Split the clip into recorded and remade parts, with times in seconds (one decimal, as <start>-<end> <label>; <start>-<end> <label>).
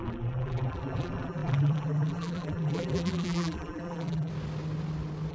0.0-4.3 remade; 4.3-5.3 recorded